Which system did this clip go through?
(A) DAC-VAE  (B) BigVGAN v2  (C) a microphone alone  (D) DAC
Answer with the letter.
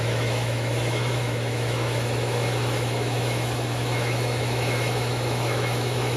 A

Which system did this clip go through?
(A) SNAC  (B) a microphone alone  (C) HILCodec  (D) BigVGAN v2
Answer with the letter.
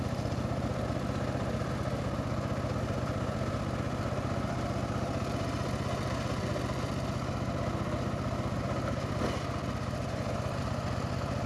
B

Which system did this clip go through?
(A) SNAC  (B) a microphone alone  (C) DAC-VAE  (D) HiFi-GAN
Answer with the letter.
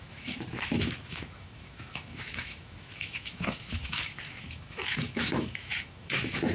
C